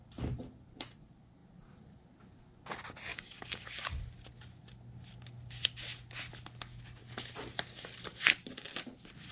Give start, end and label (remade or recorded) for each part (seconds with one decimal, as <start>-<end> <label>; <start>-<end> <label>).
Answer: 0.0-3.1 recorded; 3.1-4.0 remade; 4.0-9.3 recorded